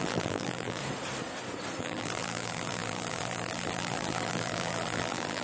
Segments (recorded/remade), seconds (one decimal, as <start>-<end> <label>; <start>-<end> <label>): 0.0-0.8 remade; 0.8-1.8 recorded; 1.8-5.4 remade

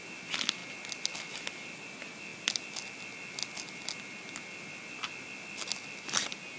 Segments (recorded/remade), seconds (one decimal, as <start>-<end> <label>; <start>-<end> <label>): 0.0-6.6 recorded

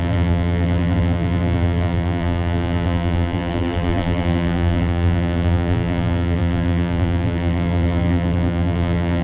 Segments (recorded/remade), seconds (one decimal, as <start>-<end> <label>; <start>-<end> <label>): 0.0-9.2 remade

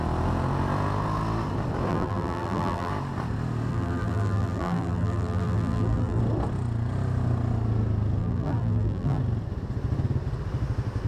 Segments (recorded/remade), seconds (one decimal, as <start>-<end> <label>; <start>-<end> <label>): 0.0-1.9 recorded; 1.9-2.9 remade; 2.9-3.7 recorded; 3.7-6.2 remade; 6.2-8.2 recorded; 8.2-9.2 remade; 9.2-11.1 recorded

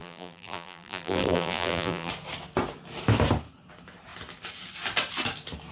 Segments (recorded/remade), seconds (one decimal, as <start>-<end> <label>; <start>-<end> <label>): 0.0-2.1 remade; 2.1-5.7 recorded